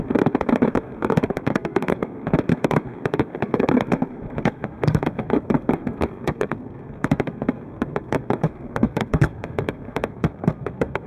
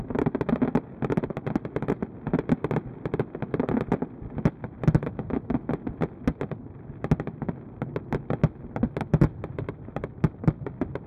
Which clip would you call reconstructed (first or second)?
first